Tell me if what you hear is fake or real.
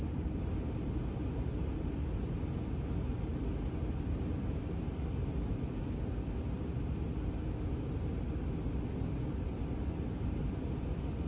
real